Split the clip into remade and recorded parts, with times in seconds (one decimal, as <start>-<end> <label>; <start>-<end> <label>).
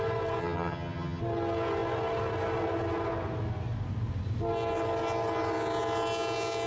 0.0-0.4 recorded; 0.4-1.2 remade; 1.2-6.7 recorded